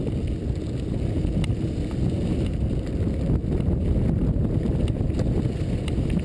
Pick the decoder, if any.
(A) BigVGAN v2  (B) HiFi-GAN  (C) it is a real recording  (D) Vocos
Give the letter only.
C